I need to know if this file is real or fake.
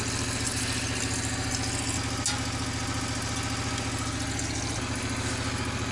real